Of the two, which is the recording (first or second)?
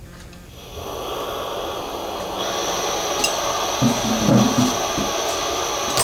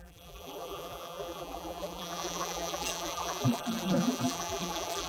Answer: first